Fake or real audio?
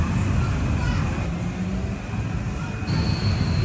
real